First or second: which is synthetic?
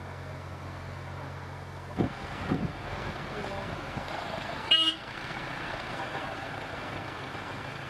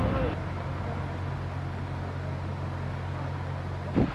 first